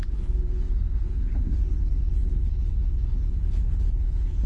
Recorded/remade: remade